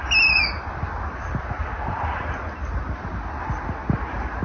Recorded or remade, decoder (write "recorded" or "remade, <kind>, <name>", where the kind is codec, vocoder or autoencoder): recorded